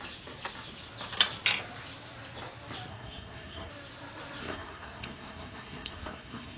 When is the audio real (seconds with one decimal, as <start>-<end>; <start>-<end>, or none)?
0.0-2.9; 3.7-4.4